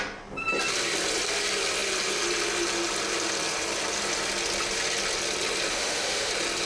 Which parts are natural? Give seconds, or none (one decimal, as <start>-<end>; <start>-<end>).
0.0-5.7; 6.3-6.7